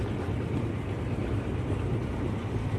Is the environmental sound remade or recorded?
recorded